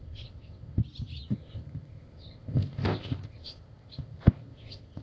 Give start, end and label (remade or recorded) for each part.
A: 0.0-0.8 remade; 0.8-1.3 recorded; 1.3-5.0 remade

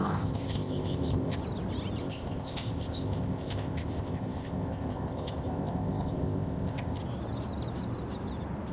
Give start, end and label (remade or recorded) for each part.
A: 0.0-1.4 remade; 1.4-2.0 recorded; 2.0-7.0 remade; 7.0-8.7 recorded